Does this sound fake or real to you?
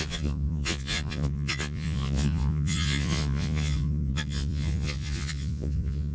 fake